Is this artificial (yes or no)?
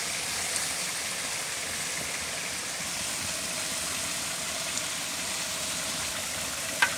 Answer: no